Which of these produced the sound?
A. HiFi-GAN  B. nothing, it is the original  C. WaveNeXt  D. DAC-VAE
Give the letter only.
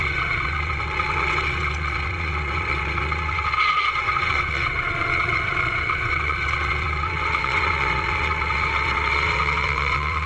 C